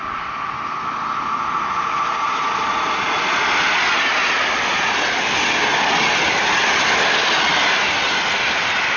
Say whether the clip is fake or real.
real